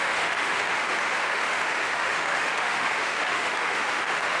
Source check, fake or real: fake